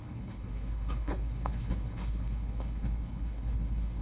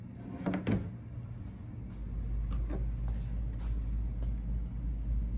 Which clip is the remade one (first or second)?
first